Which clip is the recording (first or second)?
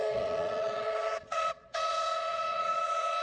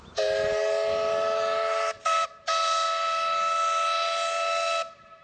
second